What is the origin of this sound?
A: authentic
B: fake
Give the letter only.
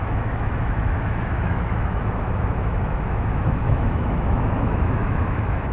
B